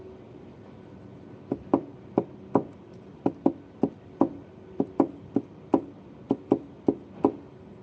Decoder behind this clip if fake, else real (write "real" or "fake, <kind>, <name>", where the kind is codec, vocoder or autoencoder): real